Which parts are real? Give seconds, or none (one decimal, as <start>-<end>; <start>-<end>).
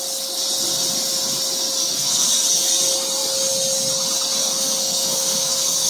0.0-1.8; 2.3-4.4